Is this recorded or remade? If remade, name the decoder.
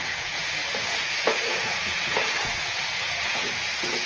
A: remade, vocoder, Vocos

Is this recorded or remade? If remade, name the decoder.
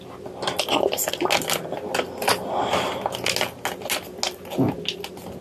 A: recorded